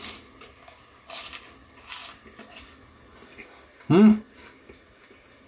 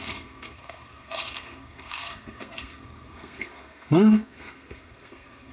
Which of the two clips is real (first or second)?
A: first